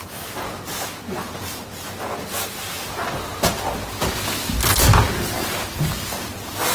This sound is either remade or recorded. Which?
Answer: recorded